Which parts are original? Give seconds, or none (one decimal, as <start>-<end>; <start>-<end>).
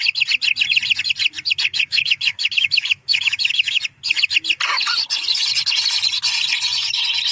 0.0-1.7; 3.8-7.3